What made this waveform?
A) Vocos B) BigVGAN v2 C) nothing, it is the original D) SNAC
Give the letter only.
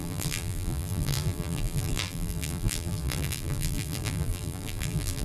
B